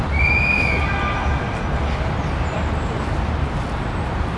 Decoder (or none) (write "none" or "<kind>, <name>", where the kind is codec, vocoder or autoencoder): none